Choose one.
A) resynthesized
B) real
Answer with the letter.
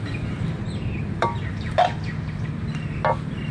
A